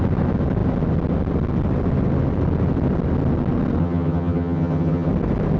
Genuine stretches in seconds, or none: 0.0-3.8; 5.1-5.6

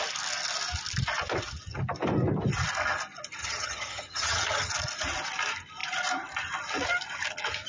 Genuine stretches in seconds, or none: 0.0-3.4; 4.7-7.7

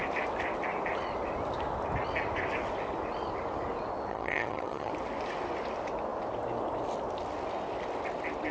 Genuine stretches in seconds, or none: 0.0-4.1; 4.9-8.5

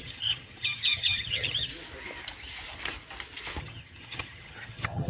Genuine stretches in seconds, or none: 1.7-3.6

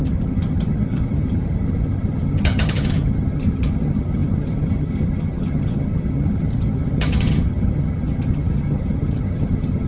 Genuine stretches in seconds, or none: none